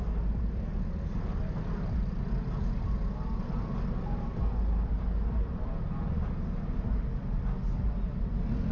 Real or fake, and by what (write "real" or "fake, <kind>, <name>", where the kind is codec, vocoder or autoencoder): real